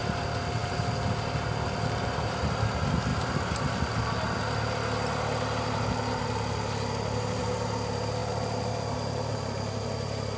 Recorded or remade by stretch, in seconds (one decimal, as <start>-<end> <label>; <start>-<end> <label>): 0.0-10.4 recorded